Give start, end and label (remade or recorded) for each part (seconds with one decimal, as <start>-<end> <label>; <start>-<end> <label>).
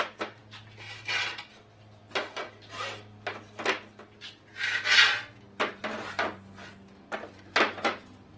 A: 0.0-8.4 recorded